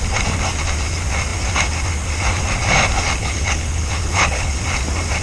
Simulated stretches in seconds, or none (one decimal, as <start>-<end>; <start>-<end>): 3.2-4.6